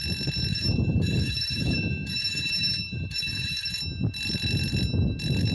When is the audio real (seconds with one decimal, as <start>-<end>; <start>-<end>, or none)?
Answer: 0.0-0.5; 3.8-5.5